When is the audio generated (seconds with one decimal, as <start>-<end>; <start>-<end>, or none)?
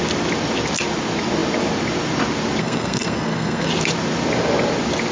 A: 2.6-3.7